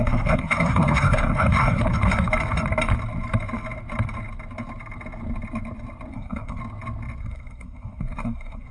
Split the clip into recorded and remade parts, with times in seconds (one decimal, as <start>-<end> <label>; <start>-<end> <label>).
0.0-1.8 remade; 1.8-6.1 recorded; 6.1-6.6 remade; 6.6-7.2 recorded; 7.2-8.7 remade